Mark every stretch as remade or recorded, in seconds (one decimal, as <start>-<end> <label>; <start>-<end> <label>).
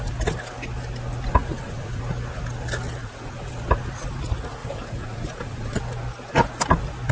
0.0-1.4 recorded; 1.4-2.0 remade; 2.0-3.0 recorded; 3.0-3.5 remade; 3.5-4.6 recorded; 4.6-5.8 remade; 5.8-7.1 recorded